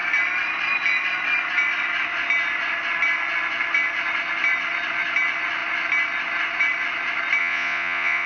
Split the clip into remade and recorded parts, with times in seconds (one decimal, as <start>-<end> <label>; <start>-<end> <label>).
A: 0.0-7.4 recorded; 7.4-8.3 remade